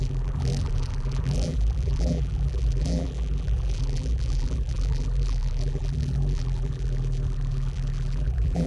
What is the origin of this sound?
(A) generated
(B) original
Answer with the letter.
A